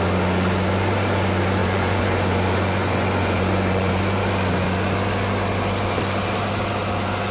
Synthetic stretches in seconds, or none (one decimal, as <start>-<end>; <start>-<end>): 1.6-4.0